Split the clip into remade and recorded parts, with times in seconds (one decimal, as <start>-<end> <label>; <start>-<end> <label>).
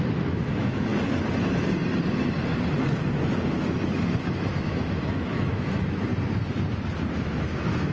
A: 0.0-0.9 remade; 0.9-3.5 recorded; 3.5-6.1 remade; 6.1-7.2 recorded; 7.2-7.9 remade